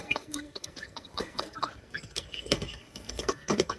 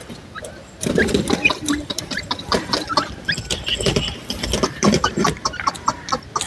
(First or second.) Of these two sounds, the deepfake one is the first